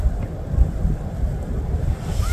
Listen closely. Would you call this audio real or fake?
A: real